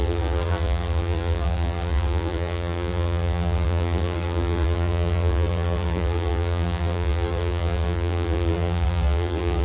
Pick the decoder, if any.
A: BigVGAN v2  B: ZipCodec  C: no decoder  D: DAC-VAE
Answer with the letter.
A